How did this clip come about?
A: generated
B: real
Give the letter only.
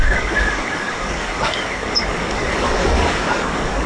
A